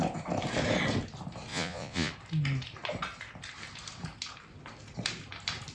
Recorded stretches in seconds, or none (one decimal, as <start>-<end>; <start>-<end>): 0.0-1.5; 2.1-5.7